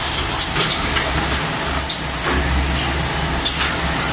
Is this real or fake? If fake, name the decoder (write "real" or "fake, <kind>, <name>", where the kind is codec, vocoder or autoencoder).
real